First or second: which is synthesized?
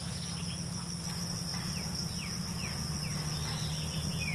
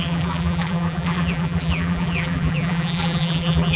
second